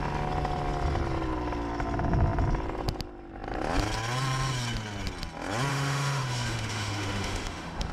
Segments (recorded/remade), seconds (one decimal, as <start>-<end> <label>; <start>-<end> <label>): 0.0-5.7 recorded; 5.7-7.9 remade